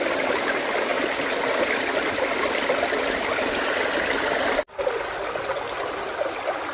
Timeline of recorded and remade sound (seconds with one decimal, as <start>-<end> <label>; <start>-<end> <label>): 0.0-6.7 recorded